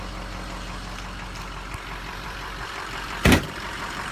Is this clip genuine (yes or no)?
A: no